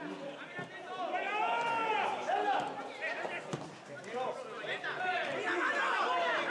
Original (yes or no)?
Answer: yes